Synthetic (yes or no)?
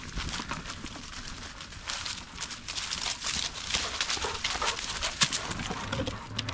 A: no